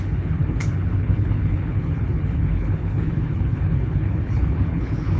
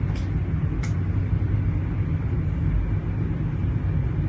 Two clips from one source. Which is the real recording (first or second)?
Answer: second